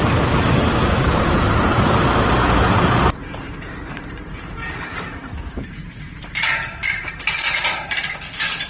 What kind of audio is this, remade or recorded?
remade